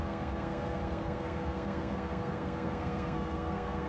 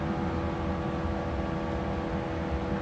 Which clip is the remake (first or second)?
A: first